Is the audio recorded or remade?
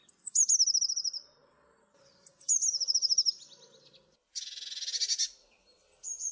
recorded